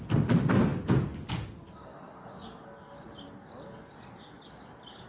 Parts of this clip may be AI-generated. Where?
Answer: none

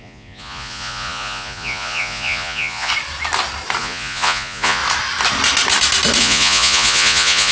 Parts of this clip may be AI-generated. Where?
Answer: 0.0-2.9 (vocoder, Vocos); 3.8-4.8; 6.2-7.5

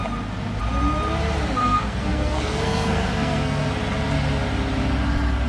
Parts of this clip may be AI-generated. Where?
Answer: 1.6-3.7 (codec, SNAC)